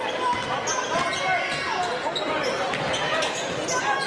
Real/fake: real